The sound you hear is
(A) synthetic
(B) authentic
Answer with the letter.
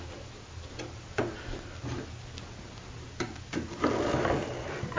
B